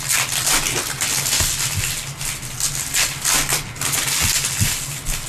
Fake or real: real